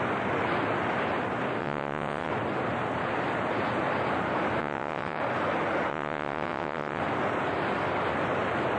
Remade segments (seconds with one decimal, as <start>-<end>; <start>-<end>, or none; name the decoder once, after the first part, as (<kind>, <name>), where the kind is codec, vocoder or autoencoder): 1.6-2.3 (vocoder, WaveNeXt); 4.6-5.2; 5.9-7.0

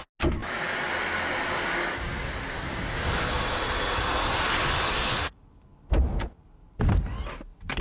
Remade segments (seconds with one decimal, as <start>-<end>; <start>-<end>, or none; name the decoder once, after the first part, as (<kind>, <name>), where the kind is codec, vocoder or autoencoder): none

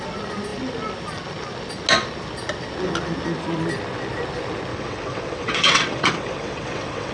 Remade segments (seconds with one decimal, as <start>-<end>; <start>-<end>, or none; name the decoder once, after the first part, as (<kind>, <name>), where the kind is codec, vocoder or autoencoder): 4.7-7.1 (vocoder, WaveNeXt)

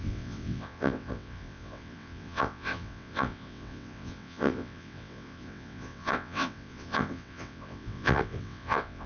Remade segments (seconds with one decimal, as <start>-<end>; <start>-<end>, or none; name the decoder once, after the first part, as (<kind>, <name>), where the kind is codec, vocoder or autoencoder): 0.0-9.1 (vocoder, WaveNeXt)